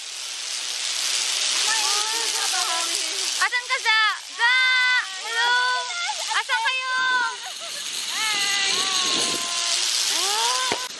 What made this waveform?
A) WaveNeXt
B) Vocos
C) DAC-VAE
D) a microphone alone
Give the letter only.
D